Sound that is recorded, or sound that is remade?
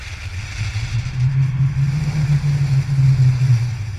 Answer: recorded